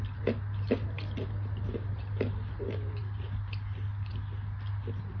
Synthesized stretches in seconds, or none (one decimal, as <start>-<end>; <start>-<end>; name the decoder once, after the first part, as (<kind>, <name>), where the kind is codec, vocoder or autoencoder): none